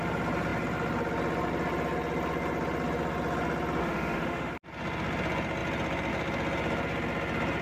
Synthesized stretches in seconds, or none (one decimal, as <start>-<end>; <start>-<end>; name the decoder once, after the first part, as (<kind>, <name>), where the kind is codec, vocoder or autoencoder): 3.8-4.5 (autoencoder, DAC-VAE)